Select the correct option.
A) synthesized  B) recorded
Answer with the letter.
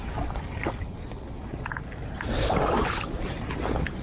B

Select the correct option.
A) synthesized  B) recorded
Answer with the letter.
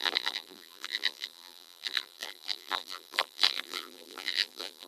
A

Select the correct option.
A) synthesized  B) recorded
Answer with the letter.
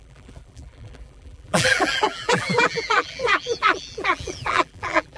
A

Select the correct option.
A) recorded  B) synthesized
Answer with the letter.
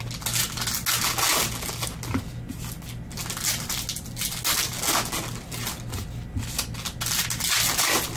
A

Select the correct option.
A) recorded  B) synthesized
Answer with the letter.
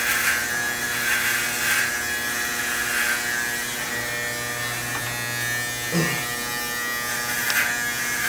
A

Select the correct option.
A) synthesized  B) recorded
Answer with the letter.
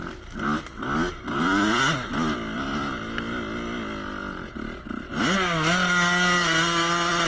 B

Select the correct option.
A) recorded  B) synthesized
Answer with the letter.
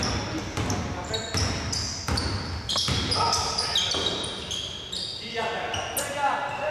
A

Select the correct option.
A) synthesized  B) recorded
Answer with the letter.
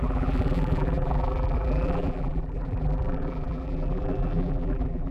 A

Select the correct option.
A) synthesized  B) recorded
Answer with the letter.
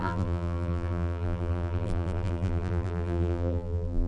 A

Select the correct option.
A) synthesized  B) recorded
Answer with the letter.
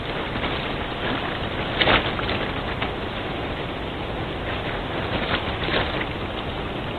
B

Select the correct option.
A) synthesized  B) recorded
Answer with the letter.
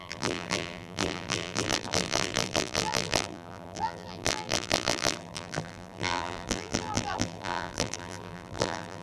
A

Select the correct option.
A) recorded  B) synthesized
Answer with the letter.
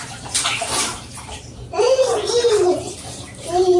B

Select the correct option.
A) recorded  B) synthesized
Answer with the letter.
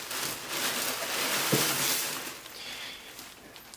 A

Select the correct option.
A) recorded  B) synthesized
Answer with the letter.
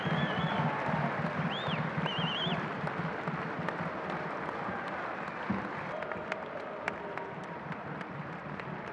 B